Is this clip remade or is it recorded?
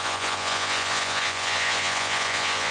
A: remade